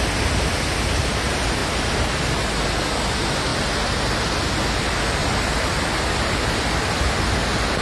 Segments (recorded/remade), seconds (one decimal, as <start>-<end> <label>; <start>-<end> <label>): 0.0-1.6 recorded; 1.6-2.3 remade; 2.3-3.5 recorded; 3.5-4.6 remade; 4.6-5.2 recorded; 5.2-7.0 remade; 7.0-7.8 recorded